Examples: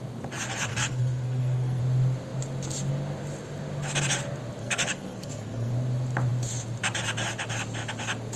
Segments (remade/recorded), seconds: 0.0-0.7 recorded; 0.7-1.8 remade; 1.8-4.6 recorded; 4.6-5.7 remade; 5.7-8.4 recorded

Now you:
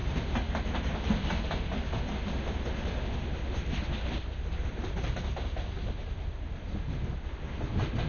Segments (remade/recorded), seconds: 0.0-8.1 recorded

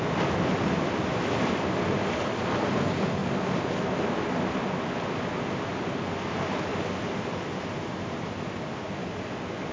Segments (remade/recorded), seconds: 0.0-9.7 recorded

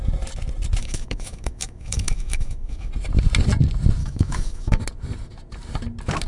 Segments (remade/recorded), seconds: 0.0-0.8 recorded; 0.8-2.9 remade; 2.9-4.0 recorded; 4.0-4.8 remade; 4.8-6.3 recorded

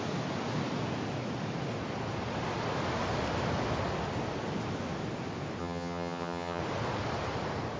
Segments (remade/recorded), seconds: 0.0-5.6 recorded; 5.6-6.6 remade; 6.6-7.8 recorded

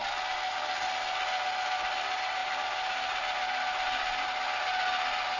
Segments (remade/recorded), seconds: 0.0-5.4 recorded

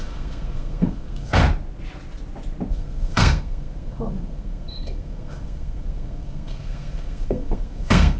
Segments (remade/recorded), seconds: 0.0-1.4 remade; 1.4-2.7 recorded; 2.7-8.2 remade

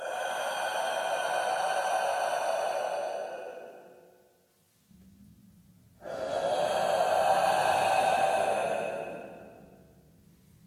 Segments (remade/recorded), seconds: 0.0-10.7 recorded